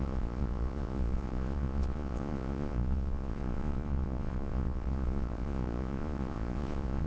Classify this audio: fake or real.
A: fake